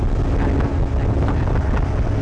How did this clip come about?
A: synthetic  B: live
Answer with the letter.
B